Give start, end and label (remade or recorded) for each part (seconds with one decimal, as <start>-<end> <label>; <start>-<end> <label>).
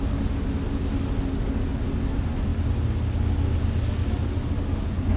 0.0-5.2 recorded